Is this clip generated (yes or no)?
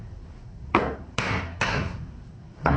yes